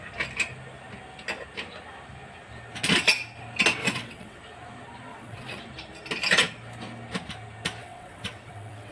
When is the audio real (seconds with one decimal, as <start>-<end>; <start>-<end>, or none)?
0.0-3.8; 4.4-5.1; 5.6-7.8